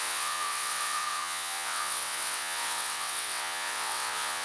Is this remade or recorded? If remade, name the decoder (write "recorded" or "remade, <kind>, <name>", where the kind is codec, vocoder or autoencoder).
remade, vocoder, WaveNeXt